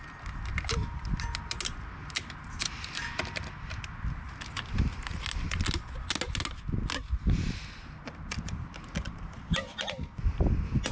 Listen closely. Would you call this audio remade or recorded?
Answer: recorded